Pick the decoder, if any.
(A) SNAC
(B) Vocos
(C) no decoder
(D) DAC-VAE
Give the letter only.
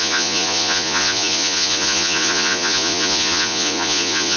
B